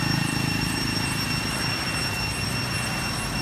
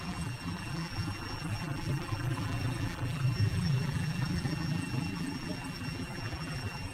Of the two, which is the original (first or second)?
first